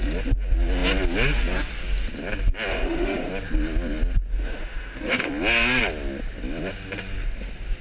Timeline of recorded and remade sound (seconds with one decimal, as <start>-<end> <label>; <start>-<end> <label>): 0.0-2.7 recorded; 2.7-3.3 remade; 3.3-4.3 recorded; 4.3-5.3 remade; 5.3-7.8 recorded